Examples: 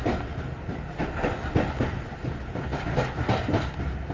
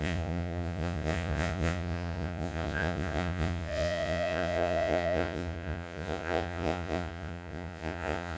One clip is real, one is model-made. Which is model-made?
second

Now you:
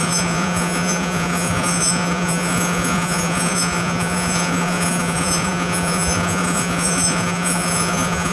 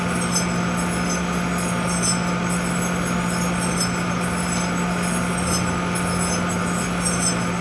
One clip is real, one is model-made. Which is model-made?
first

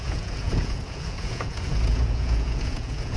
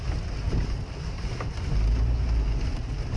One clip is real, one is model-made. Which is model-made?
first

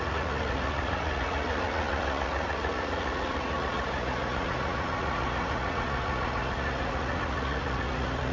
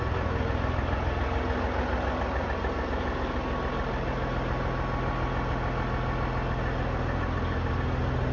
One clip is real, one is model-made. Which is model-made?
first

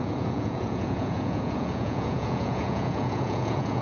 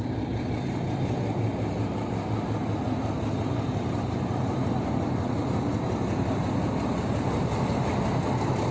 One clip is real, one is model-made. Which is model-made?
first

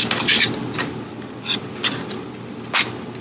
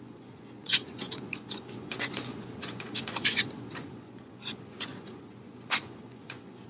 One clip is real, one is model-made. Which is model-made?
second